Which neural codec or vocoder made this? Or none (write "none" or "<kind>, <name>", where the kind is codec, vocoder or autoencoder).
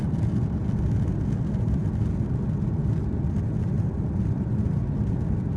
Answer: none